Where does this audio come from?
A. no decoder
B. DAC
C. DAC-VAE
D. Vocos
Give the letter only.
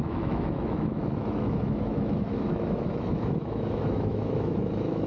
C